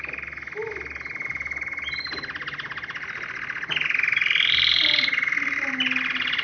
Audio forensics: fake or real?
real